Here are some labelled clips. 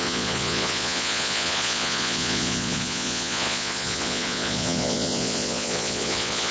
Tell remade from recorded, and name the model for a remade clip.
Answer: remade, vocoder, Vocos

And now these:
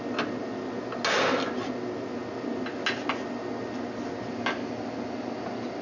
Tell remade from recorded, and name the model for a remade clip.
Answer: recorded